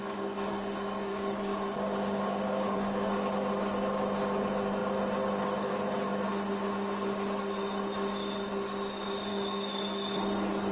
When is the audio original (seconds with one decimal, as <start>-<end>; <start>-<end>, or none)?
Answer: 0.0-1.1; 3.2-9.3; 10.2-10.7

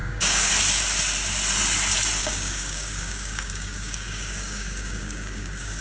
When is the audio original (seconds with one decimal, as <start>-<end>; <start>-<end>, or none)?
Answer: 0.5-2.2

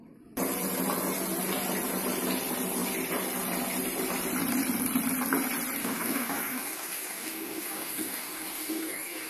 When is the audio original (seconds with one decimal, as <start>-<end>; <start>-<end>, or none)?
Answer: 0.0-5.8

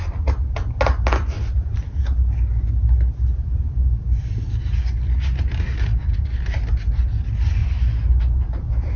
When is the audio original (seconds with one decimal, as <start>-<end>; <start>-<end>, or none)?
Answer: 0.0-9.0

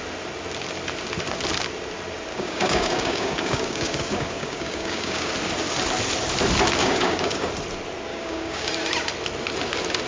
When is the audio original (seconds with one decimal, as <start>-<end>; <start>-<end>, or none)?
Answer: 0.0-2.3; 5.3-6.8; 7.5-8.1; 8.7-10.1

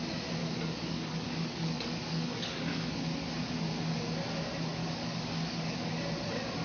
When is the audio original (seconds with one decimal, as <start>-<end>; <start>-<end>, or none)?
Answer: 0.0-0.4; 3.0-4.8; 6.0-6.6